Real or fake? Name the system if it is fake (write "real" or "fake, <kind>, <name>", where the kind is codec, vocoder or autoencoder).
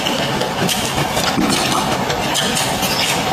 real